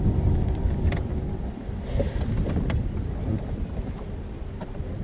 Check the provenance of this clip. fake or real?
fake